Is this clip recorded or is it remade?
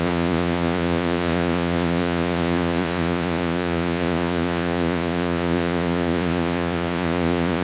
remade